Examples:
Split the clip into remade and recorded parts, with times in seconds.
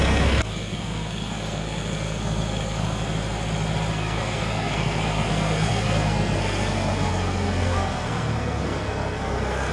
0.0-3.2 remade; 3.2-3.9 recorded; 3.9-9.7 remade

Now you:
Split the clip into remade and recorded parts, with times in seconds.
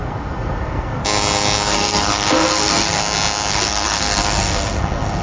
0.0-1.0 remade; 1.0-1.7 recorded; 1.7-3.0 remade; 3.0-3.5 recorded; 3.5-5.2 remade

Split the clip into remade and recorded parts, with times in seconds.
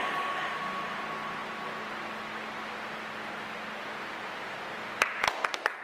0.0-5.8 recorded